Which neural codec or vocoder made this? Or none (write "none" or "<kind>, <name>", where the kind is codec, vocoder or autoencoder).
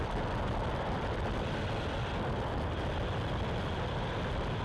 none